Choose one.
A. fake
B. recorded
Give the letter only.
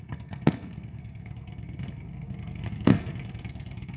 A